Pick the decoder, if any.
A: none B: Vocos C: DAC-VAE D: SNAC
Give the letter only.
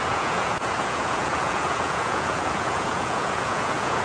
B